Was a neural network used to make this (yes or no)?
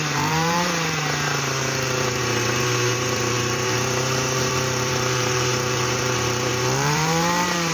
yes